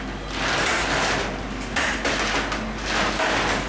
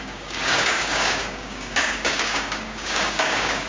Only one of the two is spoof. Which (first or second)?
second